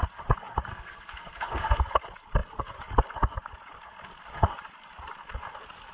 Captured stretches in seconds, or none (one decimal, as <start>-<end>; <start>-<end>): 0.0-0.7; 1.8-5.9